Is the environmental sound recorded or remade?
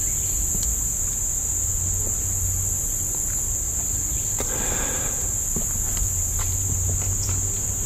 recorded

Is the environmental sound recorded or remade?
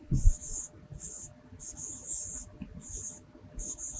recorded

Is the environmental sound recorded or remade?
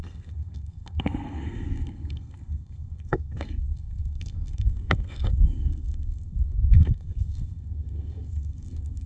remade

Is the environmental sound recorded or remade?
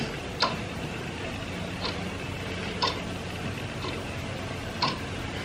recorded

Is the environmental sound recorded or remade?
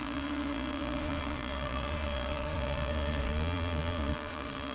remade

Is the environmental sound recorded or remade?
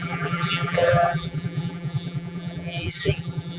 remade